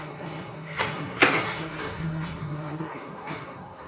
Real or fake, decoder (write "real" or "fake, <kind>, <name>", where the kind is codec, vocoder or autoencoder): fake, codec, SNAC